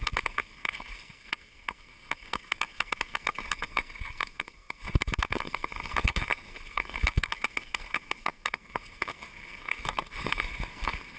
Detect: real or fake fake